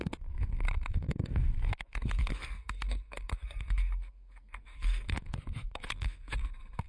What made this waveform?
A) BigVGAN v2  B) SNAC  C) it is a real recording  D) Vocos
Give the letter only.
B